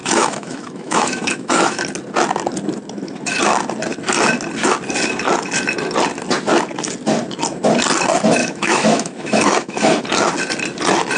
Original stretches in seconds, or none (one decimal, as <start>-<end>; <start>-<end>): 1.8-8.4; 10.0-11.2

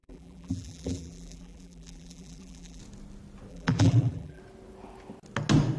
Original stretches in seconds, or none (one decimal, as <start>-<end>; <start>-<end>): 2.8-3.5; 4.4-5.8

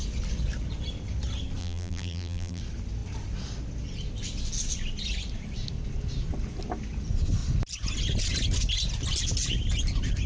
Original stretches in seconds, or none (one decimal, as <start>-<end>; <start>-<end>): 0.0-1.6; 2.6-10.3

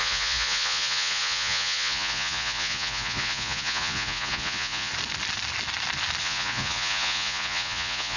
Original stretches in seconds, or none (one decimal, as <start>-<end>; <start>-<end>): 4.9-6.2

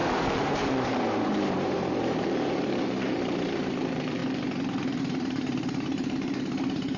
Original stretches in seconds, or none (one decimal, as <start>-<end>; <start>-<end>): 4.2-5.0

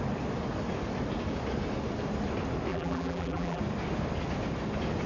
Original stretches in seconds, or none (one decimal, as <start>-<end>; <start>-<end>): 0.0-2.7; 3.6-5.1

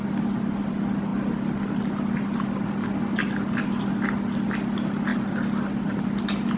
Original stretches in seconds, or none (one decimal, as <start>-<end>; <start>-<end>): 0.0-6.6